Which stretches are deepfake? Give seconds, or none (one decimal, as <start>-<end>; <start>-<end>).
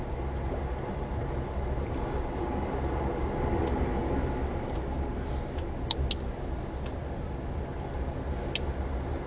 none